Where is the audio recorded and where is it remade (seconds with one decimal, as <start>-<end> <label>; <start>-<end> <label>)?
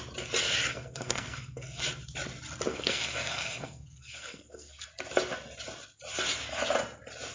0.0-0.7 recorded; 0.7-1.8 remade; 1.8-2.7 recorded; 2.7-4.9 remade; 4.9-7.3 recorded